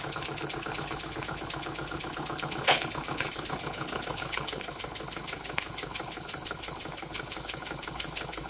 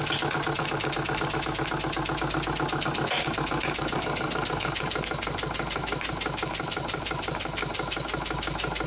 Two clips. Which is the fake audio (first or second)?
first